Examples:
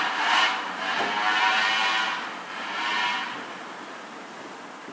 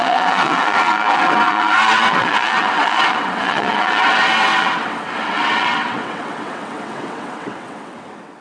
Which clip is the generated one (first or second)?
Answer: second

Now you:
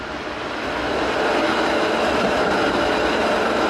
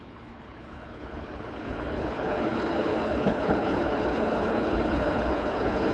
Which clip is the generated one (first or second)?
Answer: second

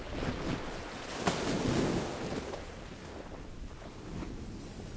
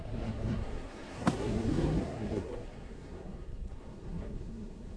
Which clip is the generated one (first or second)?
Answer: second